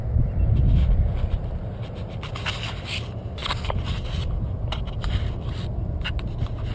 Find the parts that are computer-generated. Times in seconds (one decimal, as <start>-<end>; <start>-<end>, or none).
none